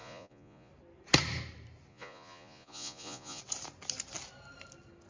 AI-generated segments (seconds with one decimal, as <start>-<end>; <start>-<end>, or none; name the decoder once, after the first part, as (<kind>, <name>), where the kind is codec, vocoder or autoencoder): 0.0-0.7 (vocoder, Vocos); 1.9-3.4